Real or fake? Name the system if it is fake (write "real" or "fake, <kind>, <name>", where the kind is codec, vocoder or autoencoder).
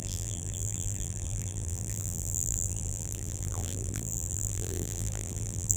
fake, vocoder, BigVGAN v2